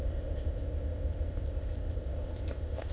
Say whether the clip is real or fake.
fake